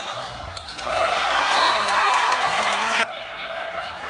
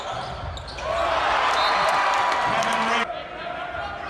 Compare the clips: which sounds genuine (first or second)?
second